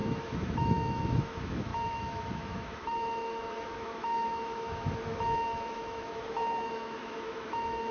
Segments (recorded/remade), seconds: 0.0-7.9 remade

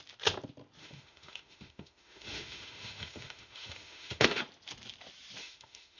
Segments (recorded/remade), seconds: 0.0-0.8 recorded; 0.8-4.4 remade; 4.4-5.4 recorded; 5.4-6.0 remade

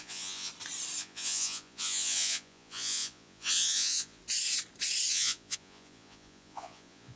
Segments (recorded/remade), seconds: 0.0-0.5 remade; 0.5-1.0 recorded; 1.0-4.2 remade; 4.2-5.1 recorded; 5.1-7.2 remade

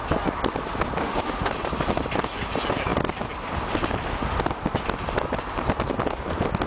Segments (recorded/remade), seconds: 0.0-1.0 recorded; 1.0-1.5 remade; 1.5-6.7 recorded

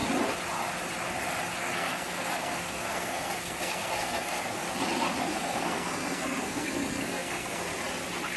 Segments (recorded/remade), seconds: 0.0-1.6 recorded; 1.6-4.6 remade; 4.6-5.2 recorded; 5.2-7.7 remade; 7.7-8.4 recorded

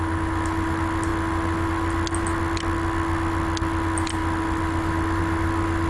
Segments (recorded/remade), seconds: 0.0-5.9 recorded

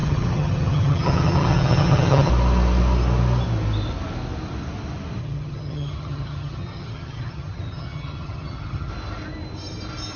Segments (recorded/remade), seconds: 0.0-2.3 remade; 2.3-5.2 recorded; 5.2-8.9 remade; 8.9-10.2 recorded

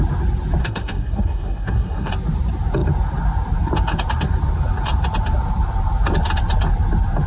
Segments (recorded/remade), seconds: 0.0-0.6 recorded; 0.6-2.1 remade; 2.1-7.3 recorded